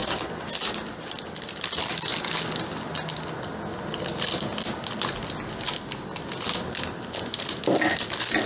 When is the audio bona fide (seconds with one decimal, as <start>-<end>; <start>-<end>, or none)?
0.0-8.5